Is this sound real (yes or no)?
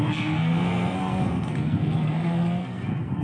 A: no